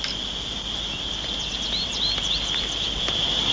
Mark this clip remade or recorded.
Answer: recorded